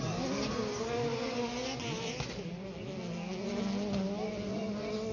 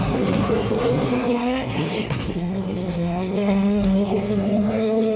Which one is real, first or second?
first